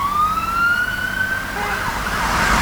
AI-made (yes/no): no